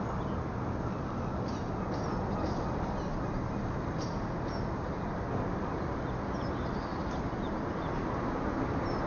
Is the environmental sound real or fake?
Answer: real